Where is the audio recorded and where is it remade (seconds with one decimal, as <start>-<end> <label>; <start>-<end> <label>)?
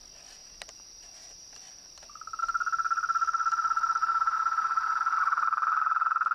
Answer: 0.0-0.4 recorded; 0.4-2.4 remade; 2.4-4.0 recorded; 4.0-5.0 remade; 5.0-6.3 recorded